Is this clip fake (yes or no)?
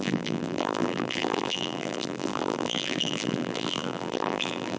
yes